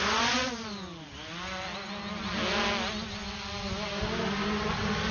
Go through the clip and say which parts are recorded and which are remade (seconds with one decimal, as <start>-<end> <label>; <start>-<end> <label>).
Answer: 0.0-5.1 recorded